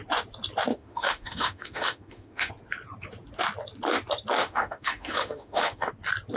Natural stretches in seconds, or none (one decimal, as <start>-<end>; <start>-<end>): 0.0-0.7; 2.5-4.4; 5.9-6.4